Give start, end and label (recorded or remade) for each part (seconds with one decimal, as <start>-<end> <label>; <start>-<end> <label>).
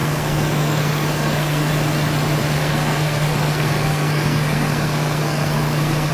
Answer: 0.0-1.7 remade; 1.7-2.4 recorded; 2.4-6.1 remade